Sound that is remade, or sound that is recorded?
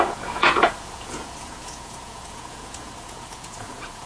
remade